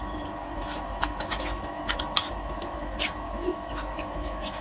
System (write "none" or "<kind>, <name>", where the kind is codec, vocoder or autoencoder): autoencoder, DAC-VAE